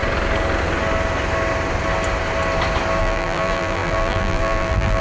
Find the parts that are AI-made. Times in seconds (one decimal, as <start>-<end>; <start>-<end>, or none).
3.0-5.0

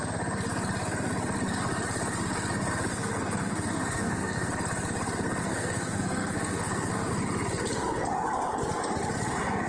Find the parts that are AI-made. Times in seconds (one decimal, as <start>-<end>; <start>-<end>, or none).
2.9-4.5; 5.4-7.1

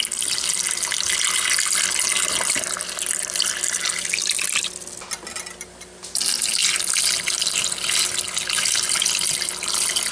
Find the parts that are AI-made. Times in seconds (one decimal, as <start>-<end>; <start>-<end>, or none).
none

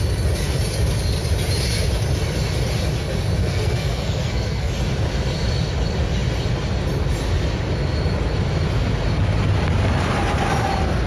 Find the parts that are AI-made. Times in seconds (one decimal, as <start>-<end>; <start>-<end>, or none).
3.4-4.7

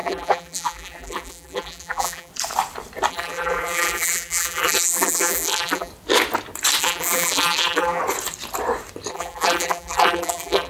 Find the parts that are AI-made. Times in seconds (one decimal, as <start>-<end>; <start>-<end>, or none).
0.0-2.3; 3.1-5.9; 6.8-8.0; 9.1-10.7

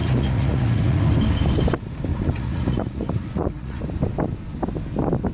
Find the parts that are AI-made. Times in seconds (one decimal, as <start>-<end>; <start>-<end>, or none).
0.0-1.0; 2.1-3.8

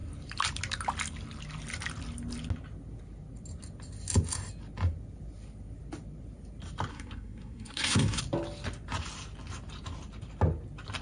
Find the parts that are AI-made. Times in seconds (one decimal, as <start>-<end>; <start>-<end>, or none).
6.9-8.2

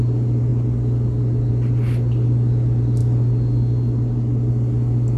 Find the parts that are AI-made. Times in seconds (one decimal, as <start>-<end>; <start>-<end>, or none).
none